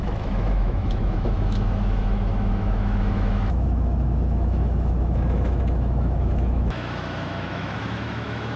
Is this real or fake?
fake